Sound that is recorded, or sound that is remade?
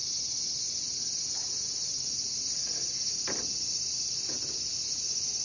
recorded